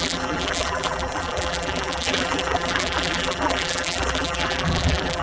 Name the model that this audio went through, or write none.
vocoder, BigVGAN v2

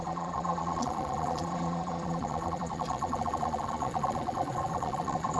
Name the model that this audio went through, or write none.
vocoder, Vocos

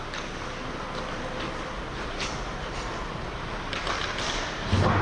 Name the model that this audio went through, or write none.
none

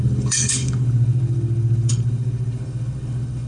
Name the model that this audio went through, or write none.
codec, HILCodec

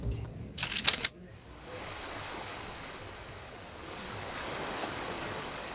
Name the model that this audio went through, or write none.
codec, DAC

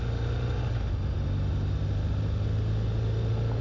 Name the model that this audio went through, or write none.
none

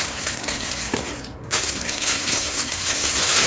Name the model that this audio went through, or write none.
codec, SNAC